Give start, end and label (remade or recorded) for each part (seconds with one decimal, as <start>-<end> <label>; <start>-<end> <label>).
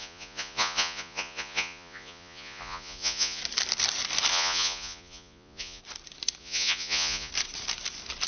0.0-3.4 remade; 3.4-4.3 recorded; 4.3-5.8 remade; 5.8-6.4 recorded; 6.4-7.3 remade; 7.3-8.3 recorded